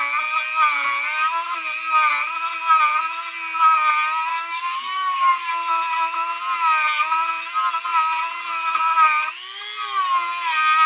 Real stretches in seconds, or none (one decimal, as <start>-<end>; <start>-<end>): 0.0-4.3; 5.5-10.9